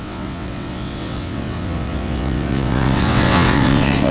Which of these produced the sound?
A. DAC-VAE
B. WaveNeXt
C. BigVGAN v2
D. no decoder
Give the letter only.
B